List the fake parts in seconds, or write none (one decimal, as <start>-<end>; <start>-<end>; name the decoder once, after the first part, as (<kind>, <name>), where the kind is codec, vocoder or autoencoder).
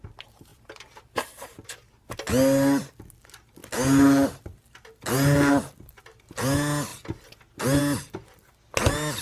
0.5-2.1 (vocoder, BigVGAN v2)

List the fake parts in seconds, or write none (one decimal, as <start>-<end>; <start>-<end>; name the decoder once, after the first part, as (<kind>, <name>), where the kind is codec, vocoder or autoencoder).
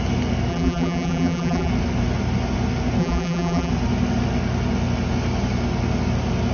0.5-1.7 (vocoder, BigVGAN v2); 3.0-3.7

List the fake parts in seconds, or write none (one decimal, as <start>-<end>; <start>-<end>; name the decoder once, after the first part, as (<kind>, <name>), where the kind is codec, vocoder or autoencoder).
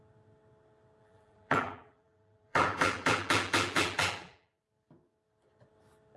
1.0-4.6 (vocoder, BigVGAN v2)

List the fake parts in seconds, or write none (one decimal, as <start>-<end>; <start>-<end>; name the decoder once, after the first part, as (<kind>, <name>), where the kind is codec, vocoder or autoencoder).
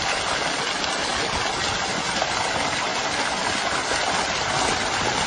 none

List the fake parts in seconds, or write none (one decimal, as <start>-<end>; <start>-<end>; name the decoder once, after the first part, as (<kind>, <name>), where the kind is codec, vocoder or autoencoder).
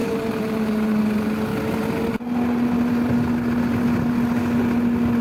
0.0-1.0 (vocoder, BigVGAN v2)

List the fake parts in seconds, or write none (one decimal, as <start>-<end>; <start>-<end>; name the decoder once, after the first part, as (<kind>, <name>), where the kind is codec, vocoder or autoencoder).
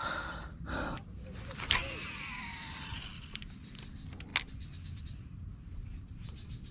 0.0-4.3 (vocoder, BigVGAN v2); 5.0-6.7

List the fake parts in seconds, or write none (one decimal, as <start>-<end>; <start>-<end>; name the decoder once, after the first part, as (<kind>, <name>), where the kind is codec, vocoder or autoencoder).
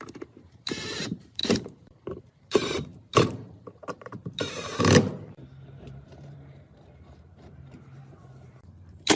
0.0-4.7 (vocoder, BigVGAN v2); 5.8-9.2